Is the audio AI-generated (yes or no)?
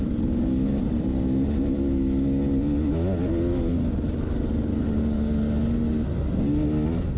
no